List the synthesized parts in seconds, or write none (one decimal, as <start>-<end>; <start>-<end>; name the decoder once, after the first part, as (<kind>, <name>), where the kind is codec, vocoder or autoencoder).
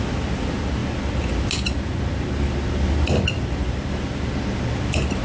none